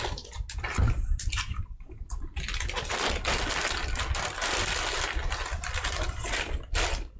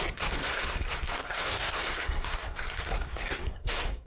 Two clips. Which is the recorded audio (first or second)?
first